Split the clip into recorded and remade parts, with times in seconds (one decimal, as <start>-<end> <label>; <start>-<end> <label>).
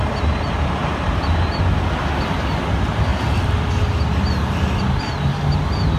0.0-0.8 recorded; 0.8-1.6 remade; 1.6-6.0 recorded